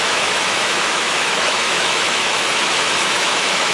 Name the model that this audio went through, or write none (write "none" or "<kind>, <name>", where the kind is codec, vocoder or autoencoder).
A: autoencoder, DAC-VAE